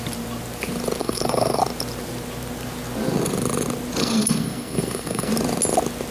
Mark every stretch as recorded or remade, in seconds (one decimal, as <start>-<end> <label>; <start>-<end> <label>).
0.0-1.0 recorded; 1.0-1.6 remade; 1.6-4.0 recorded; 4.0-5.3 remade; 5.3-6.1 recorded

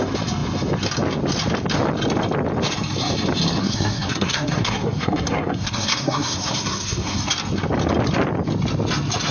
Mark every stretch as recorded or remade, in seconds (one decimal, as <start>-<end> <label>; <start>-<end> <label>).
0.0-3.6 recorded; 3.6-7.2 remade; 7.2-9.3 recorded

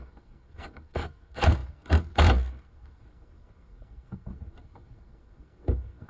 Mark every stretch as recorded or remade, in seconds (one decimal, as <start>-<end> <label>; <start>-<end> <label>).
0.0-6.1 remade

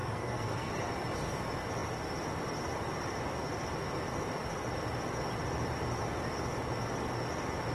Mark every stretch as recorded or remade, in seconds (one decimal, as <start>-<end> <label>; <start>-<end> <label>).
0.0-0.7 remade; 0.7-7.7 recorded

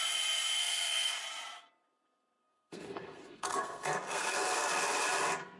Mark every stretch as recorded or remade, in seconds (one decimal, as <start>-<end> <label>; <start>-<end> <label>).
0.0-0.6 recorded; 0.6-1.2 remade; 1.2-2.4 recorded; 2.4-4.7 remade; 4.7-5.6 recorded